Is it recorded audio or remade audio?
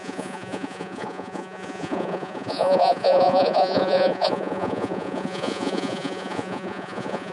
remade